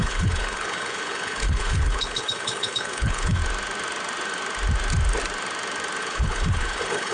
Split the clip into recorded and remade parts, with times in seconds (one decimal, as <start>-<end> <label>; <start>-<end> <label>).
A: 0.0-3.4 remade; 3.4-6.0 recorded; 6.0-7.1 remade